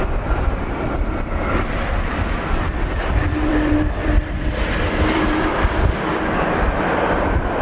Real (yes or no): no